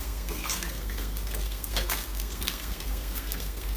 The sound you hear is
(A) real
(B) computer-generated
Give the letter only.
B